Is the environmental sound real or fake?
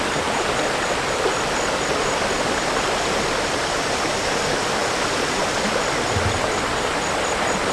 real